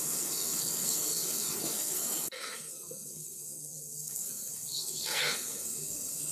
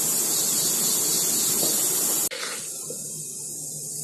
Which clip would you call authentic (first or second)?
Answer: second